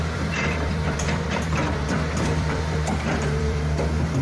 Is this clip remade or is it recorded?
remade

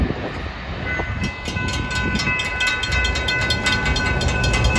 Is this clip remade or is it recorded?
recorded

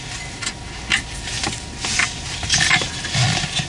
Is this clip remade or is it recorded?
recorded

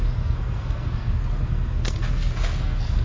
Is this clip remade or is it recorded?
remade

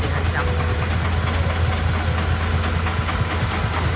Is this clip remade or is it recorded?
recorded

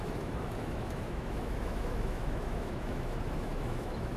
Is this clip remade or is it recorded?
remade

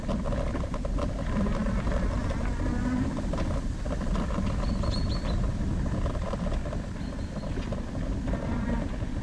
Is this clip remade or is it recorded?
recorded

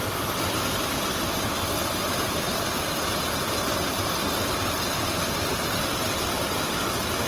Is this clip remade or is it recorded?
recorded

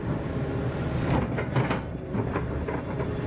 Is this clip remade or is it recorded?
remade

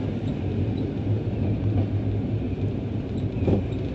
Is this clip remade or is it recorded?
recorded